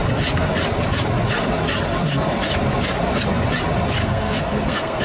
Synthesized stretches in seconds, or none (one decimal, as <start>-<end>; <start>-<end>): 4.0-5.0